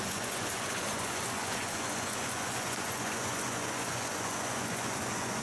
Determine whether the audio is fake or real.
fake